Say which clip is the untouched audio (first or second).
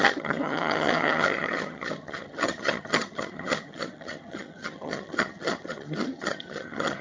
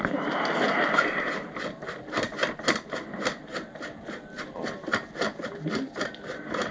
second